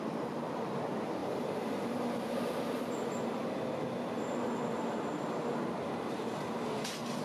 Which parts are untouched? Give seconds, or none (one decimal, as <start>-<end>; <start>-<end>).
0.0-7.2